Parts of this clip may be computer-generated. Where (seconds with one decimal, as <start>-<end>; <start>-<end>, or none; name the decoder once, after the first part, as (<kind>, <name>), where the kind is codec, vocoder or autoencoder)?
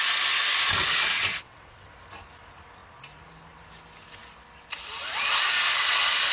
1.3-1.9 (vocoder, WaveNeXt)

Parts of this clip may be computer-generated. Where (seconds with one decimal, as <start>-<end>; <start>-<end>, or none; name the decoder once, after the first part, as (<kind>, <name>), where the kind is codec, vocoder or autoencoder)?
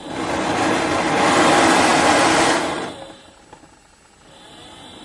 none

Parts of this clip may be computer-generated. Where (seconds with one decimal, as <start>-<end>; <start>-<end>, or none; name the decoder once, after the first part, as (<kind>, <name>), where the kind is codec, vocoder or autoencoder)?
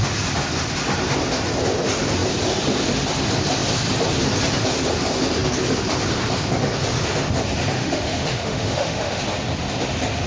7.8-9.2 (autoencoder, DAC-VAE)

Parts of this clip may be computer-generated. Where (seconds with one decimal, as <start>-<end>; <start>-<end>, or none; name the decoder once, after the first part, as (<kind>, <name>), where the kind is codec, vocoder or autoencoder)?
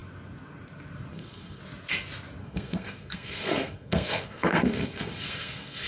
1.1-1.6 (codec, SNAC); 2.4-5.9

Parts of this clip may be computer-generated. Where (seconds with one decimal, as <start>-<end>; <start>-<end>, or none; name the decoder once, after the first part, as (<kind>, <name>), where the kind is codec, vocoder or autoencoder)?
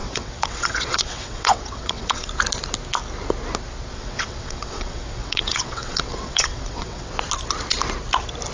0.0-2.3 (vocoder, WaveNeXt); 3.9-7.1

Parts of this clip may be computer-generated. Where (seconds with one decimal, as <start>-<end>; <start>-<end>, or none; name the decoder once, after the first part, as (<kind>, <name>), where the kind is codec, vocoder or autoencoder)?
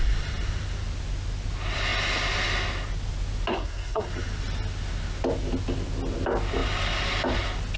3.5-4.1 (codec, SNAC)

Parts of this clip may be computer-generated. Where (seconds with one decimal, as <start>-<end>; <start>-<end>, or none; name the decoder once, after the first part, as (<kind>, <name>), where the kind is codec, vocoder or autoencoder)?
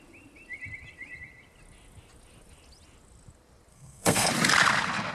3.7-4.3 (codec, SNAC)